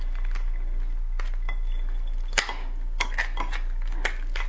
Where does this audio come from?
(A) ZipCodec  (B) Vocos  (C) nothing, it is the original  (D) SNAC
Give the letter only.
C